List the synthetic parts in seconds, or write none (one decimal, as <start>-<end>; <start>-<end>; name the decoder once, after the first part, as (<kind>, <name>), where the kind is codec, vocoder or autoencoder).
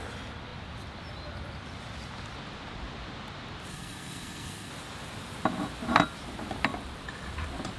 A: 3.7-4.7 (codec, SNAC)